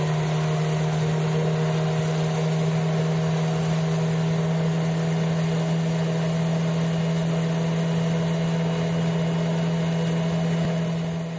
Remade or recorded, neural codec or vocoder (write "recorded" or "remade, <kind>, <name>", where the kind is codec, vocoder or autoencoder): recorded